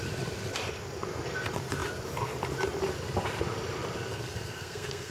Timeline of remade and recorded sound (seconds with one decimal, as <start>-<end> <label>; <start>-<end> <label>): 0.0-4.1 recorded; 4.1-5.1 remade